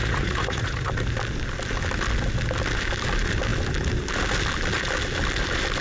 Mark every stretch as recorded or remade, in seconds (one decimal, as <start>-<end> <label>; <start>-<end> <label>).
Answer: 0.0-0.9 remade; 0.9-5.8 recorded